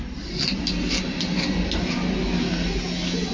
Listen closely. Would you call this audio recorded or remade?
recorded